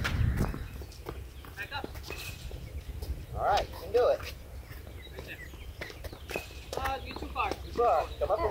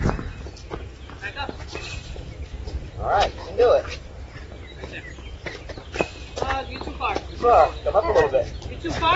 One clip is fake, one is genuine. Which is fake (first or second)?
first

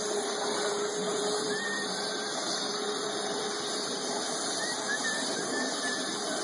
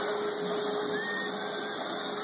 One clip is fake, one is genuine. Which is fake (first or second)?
first